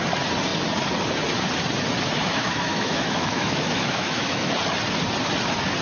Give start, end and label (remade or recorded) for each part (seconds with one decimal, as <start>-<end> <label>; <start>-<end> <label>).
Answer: 0.0-2.2 recorded; 2.2-4.5 remade; 4.5-5.8 recorded